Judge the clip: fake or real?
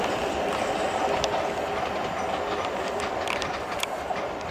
real